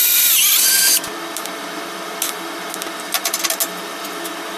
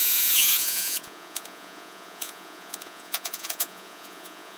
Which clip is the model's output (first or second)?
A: second